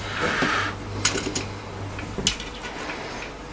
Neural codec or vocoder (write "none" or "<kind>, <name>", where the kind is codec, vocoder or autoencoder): none